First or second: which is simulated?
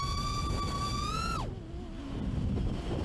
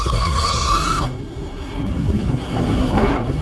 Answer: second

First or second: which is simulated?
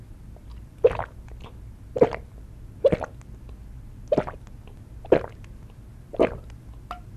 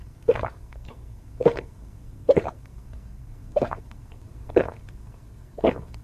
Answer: second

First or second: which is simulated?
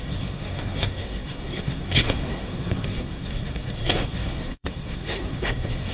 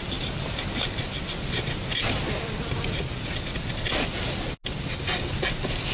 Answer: first